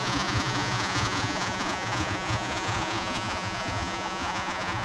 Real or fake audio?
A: fake